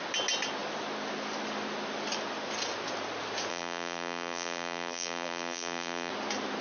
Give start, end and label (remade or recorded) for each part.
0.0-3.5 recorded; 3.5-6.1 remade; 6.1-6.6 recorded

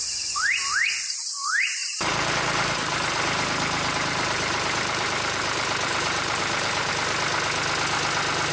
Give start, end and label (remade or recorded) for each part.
0.0-1.8 recorded; 1.8-6.9 remade; 6.9-8.5 recorded